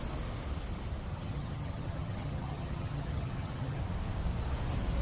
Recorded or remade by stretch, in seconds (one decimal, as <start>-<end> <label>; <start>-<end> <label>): 0.0-1.1 recorded; 1.1-3.8 remade; 3.8-5.0 recorded